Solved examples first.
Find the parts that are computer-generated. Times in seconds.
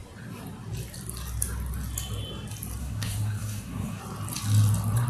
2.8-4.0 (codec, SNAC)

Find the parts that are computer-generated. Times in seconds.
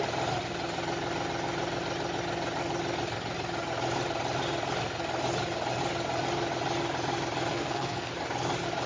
7.5-8.1 (codec, SNAC)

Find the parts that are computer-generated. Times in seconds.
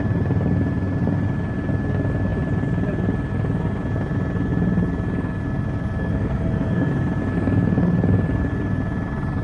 6.0-6.9 (codec, SNAC)